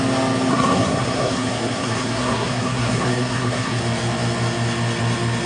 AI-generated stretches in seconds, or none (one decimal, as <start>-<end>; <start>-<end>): 0.5-3.8